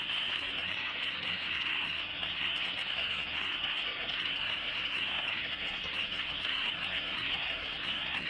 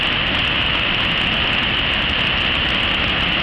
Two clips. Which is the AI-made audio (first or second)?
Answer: first